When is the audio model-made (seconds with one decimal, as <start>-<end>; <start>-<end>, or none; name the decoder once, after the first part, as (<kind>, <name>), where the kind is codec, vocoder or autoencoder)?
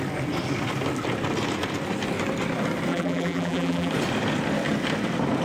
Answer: 2.9-3.9 (vocoder, BigVGAN v2)